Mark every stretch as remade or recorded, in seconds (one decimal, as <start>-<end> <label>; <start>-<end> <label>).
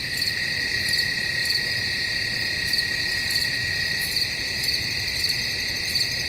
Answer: 0.0-1.4 recorded; 1.4-2.1 remade; 2.1-3.4 recorded; 3.4-5.7 remade; 5.7-6.3 recorded